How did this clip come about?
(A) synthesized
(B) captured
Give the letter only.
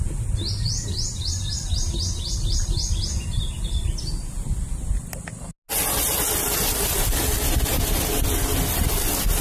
B